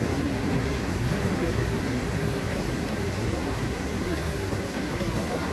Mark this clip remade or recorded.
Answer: remade